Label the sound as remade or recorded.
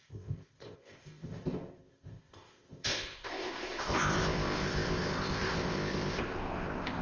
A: remade